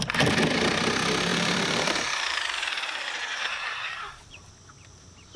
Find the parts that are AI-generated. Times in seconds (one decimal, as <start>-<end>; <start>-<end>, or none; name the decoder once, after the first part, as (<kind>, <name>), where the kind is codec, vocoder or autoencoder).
1.3-4.5 (vocoder, BigVGAN v2)